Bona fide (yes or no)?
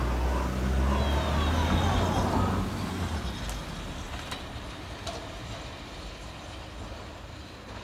yes